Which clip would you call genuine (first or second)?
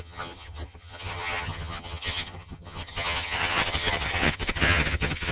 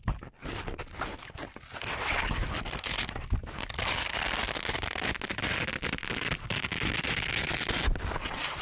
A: second